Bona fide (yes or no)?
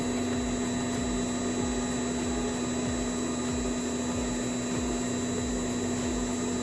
yes